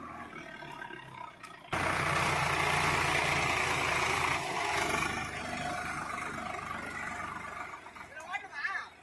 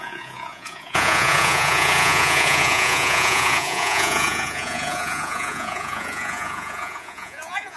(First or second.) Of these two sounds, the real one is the first